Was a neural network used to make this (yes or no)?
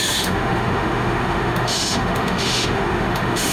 yes